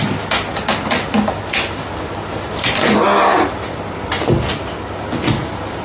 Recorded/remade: recorded